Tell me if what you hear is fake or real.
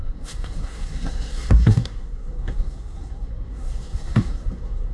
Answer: fake